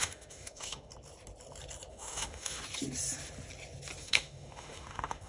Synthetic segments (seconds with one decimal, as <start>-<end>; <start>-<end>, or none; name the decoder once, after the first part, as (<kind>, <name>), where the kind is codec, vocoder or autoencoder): 0.0-0.9 (autoencoder, DAC-VAE); 1.9-2.6; 4.0-5.3